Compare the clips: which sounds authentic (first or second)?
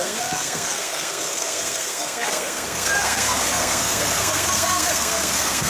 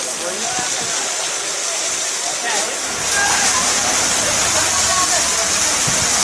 second